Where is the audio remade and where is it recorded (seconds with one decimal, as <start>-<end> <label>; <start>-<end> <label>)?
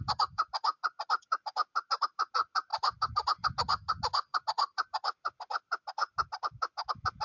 0.0-7.2 recorded